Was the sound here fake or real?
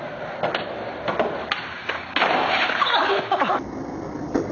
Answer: real